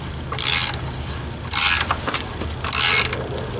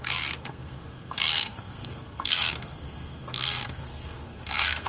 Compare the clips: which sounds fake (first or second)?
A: second